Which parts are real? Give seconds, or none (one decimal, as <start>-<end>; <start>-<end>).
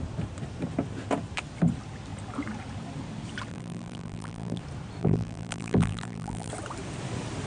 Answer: 0.0-3.5; 4.6-5.0; 6.5-7.5